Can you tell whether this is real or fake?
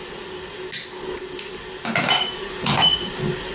real